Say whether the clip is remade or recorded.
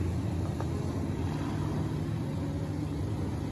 recorded